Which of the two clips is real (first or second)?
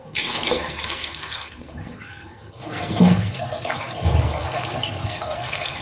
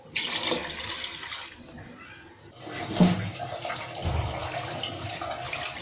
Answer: second